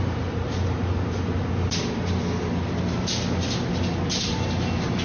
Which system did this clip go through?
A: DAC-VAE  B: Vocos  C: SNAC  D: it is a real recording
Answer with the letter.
D